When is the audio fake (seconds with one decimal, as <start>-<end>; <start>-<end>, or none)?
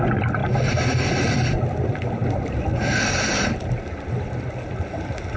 2.2-3.1